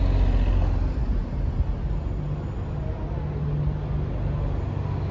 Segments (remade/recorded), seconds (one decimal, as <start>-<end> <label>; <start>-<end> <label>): 0.0-5.1 recorded